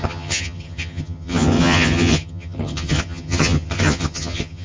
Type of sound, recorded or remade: remade